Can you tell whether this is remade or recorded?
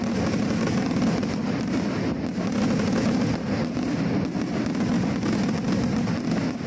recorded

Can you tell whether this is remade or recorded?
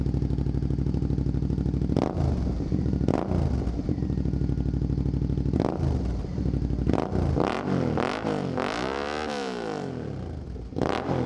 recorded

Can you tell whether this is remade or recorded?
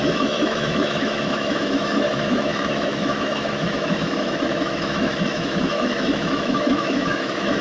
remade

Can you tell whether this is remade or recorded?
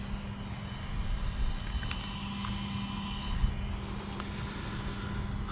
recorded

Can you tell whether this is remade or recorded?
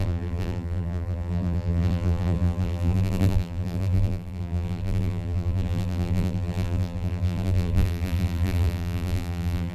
remade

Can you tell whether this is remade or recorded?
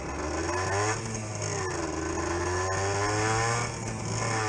recorded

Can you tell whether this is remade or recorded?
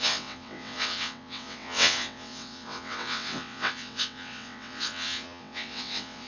remade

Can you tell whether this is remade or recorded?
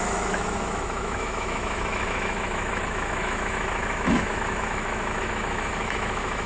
remade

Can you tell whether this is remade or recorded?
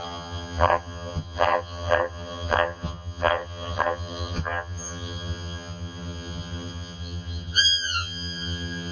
remade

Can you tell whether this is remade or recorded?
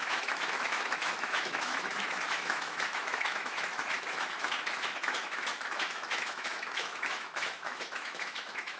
remade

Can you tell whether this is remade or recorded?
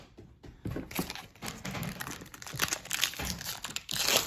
recorded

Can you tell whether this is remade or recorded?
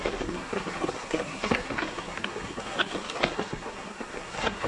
remade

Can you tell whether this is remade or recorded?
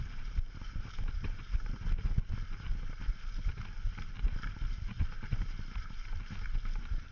recorded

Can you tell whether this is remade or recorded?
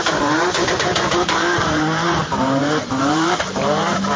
remade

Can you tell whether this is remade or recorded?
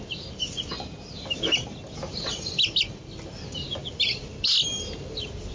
recorded